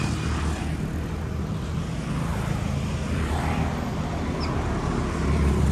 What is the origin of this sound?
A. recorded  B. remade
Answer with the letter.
A